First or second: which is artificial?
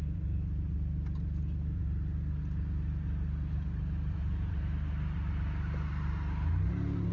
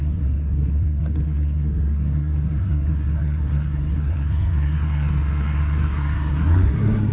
second